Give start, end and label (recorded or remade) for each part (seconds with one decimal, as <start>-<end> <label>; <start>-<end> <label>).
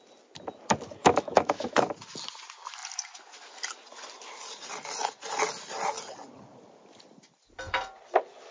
0.0-1.0 recorded; 1.0-1.9 remade; 1.9-8.5 recorded